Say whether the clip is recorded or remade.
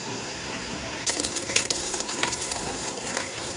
remade